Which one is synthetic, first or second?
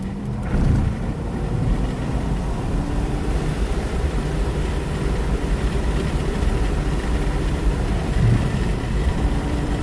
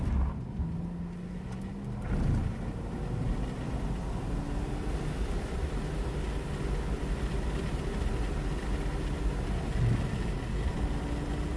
first